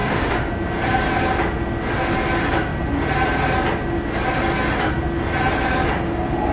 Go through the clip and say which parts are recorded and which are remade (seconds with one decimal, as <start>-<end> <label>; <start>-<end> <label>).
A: 0.0-0.5 remade; 0.5-6.5 recorded